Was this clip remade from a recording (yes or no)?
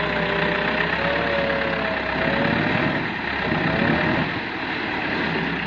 no